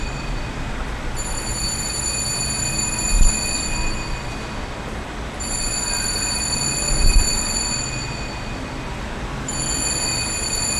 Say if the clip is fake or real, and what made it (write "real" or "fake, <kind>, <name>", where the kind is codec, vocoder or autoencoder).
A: real